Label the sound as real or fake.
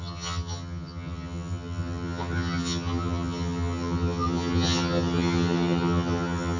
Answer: fake